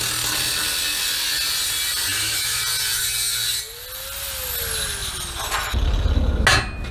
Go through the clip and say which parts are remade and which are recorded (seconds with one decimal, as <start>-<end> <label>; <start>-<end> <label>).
0.0-2.1 recorded; 2.1-2.6 remade; 2.6-6.9 recorded